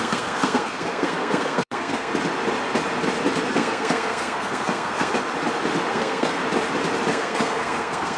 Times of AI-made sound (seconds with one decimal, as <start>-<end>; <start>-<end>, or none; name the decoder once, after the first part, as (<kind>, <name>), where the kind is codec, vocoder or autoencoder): 0.0-2.1 (codec, SNAC); 3.5-5.1; 5.9-6.4; 7.1-8.2